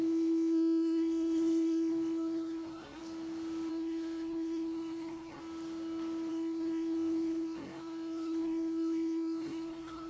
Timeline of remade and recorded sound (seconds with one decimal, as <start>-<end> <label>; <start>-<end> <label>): 0.0-3.0 remade; 3.0-3.7 recorded; 3.7-5.4 remade; 5.4-6.3 recorded; 6.3-10.1 remade

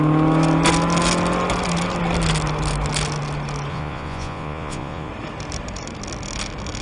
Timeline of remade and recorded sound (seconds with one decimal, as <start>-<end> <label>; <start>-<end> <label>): 0.0-3.7 recorded; 3.7-5.1 remade; 5.1-6.8 recorded

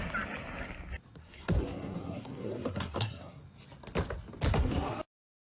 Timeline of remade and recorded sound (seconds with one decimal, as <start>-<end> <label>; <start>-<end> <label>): 0.0-1.2 recorded; 1.2-3.4 remade; 3.4-4.5 recorded; 4.5-5.0 remade; 5.0-5.4 recorded

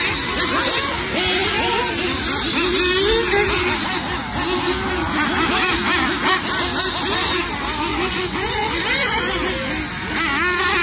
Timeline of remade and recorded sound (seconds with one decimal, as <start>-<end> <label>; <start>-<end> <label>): 0.0-7.9 recorded; 7.9-9.3 remade; 9.3-10.8 recorded

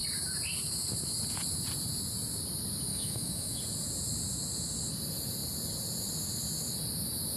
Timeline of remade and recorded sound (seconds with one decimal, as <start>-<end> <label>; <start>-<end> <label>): 0.0-2.9 recorded; 2.9-3.6 remade; 3.6-7.4 recorded